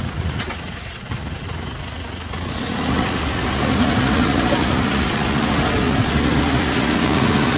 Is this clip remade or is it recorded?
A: remade